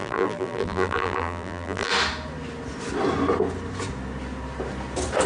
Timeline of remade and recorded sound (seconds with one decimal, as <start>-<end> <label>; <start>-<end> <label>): 0.0-1.9 remade; 1.9-5.3 recorded